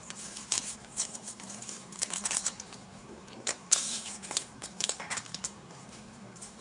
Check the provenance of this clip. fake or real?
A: fake